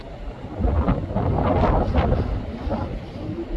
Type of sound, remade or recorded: recorded